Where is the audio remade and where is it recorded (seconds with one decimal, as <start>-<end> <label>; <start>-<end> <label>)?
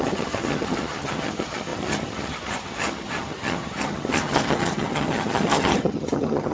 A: 0.0-6.5 remade